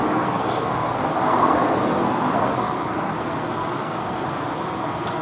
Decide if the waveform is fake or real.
fake